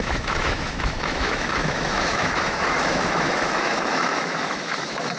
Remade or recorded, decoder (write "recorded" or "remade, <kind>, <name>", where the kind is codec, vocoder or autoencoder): remade, autoencoder, DAC-VAE